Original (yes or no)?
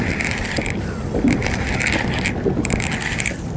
yes